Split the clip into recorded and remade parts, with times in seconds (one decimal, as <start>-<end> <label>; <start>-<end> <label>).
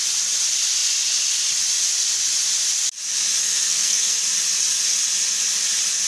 0.0-3.4 recorded; 3.4-4.2 remade; 4.2-6.1 recorded